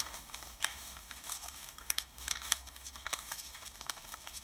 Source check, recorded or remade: remade